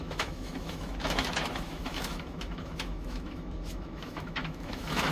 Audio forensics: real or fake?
fake